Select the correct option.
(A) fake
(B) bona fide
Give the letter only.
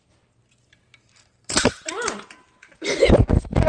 A